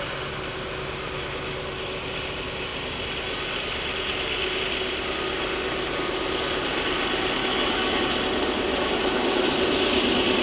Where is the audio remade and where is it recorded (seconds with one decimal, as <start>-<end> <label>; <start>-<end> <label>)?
0.0-7.4 recorded; 7.4-8.0 remade; 8.0-8.7 recorded; 8.7-9.2 remade; 9.2-10.4 recorded